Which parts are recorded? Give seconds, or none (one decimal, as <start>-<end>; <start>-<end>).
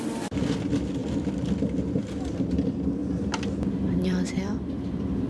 1.0-2.3; 3.0-3.7